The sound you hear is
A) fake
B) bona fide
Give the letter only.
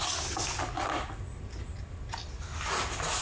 B